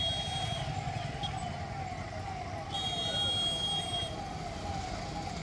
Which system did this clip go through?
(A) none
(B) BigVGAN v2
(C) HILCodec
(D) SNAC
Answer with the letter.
A